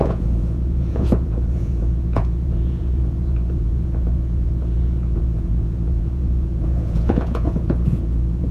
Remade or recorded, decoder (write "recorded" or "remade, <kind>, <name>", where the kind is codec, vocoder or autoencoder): remade, vocoder, Vocos